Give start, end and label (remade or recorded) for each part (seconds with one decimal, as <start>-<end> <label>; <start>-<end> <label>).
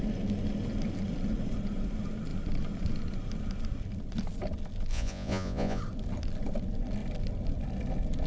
0.0-4.9 recorded; 4.9-5.8 remade; 5.8-8.3 recorded